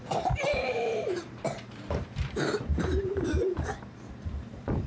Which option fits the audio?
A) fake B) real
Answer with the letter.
A